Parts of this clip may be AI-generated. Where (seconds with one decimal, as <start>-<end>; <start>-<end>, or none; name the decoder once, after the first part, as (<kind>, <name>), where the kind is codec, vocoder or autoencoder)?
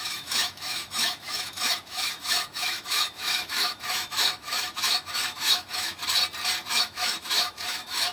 0.0-6.0 (autoencoder, DAC-VAE); 6.7-8.1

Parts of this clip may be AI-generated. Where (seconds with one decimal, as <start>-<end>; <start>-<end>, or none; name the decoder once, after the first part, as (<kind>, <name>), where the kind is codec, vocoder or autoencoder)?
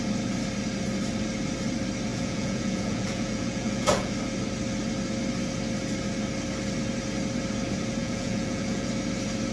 2.1-4.1 (vocoder, Vocos); 8.0-8.9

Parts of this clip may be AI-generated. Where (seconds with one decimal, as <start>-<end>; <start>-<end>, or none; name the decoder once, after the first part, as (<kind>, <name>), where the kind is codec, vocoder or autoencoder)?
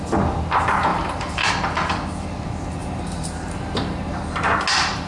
0.9-1.5 (vocoder, BigVGAN v2); 2.8-4.1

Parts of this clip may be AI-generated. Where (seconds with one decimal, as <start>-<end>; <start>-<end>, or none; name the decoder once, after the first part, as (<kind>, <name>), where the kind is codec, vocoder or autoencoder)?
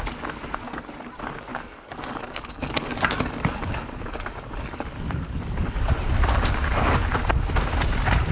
1.5-5.9 (codec, DAC)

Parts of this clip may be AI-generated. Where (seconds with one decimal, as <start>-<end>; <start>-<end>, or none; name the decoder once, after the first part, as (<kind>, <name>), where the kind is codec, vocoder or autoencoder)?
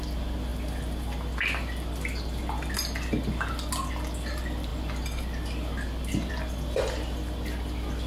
none